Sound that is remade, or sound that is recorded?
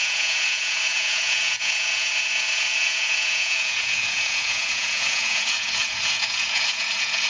remade